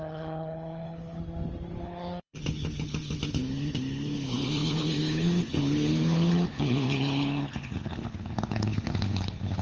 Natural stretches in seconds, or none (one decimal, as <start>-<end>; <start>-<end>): 1.2-1.8

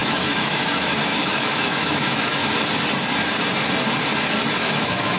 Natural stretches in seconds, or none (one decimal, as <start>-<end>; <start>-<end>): 2.4-4.6

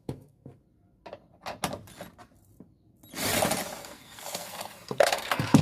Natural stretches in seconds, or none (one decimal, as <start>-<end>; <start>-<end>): 0.6-3.8

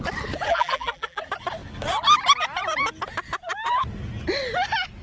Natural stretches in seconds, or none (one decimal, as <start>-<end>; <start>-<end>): 0.0-0.5; 1.2-5.0

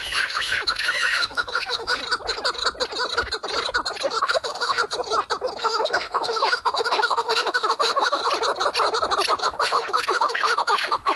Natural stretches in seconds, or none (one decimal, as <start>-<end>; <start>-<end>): 2.0-4.2; 4.8-5.6; 8.2-9.4

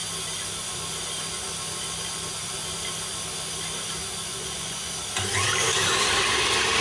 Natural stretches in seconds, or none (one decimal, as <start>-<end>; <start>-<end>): 0.0-4.3; 4.9-6.8